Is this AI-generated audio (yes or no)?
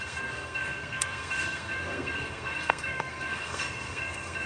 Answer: yes